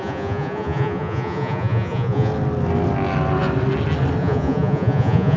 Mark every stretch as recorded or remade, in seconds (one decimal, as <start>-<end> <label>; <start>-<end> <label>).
0.0-2.3 remade; 2.3-4.2 recorded; 4.2-5.4 remade